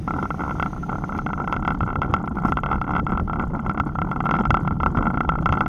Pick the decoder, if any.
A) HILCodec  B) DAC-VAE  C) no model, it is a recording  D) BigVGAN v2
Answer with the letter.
C